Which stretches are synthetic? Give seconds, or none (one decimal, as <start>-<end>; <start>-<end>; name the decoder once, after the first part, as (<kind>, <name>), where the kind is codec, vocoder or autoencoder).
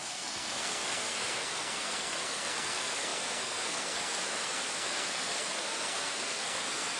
0.0-7.0 (codec, SNAC)